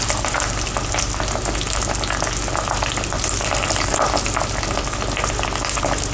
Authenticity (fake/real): real